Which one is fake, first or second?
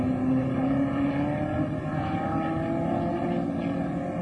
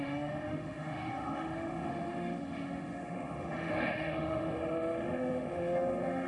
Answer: second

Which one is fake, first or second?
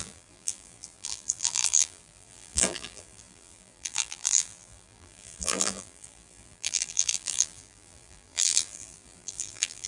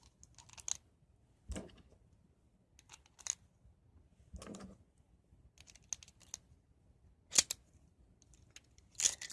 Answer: first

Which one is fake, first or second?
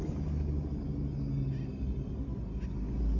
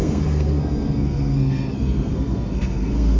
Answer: second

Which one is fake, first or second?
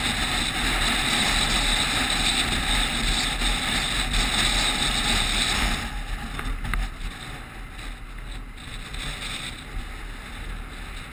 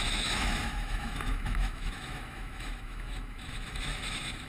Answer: second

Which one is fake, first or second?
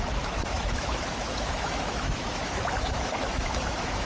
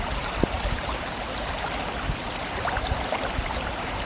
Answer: first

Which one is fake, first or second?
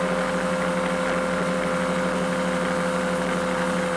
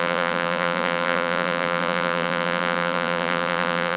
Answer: second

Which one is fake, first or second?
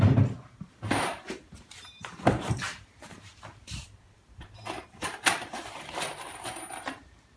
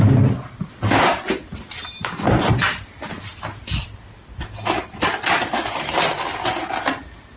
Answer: first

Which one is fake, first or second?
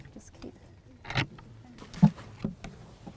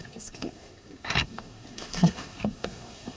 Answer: second